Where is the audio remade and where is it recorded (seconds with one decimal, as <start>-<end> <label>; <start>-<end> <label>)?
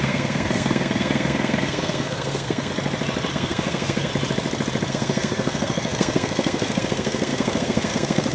0.0-2.7 remade; 2.7-3.3 recorded; 3.3-4.1 remade; 4.1-4.9 recorded; 4.9-8.3 remade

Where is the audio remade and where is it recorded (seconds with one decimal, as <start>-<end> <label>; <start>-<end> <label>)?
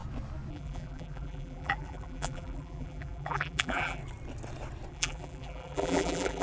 0.0-0.5 recorded; 0.5-4.0 remade; 4.0-4.9 recorded; 4.9-6.4 remade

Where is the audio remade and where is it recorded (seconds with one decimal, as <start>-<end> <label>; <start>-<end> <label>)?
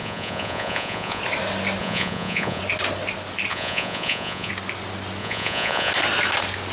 0.0-1.2 remade; 1.2-1.8 recorded; 1.8-2.6 remade; 2.6-3.5 recorded; 3.5-4.5 remade; 4.5-5.2 recorded; 5.2-5.9 remade; 5.9-6.7 recorded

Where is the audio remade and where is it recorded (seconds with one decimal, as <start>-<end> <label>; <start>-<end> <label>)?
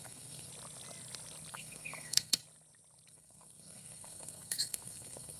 0.0-0.5 remade; 0.5-1.5 recorded; 1.5-2.4 remade; 2.4-3.1 recorded; 3.1-5.4 remade